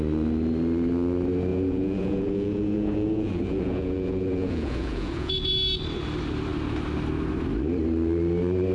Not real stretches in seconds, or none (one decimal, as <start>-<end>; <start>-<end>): 1.5-5.5